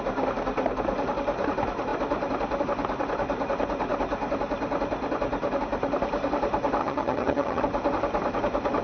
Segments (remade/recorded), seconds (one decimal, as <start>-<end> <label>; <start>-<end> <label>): 0.0-6.8 recorded; 6.8-7.6 remade; 7.6-8.8 recorded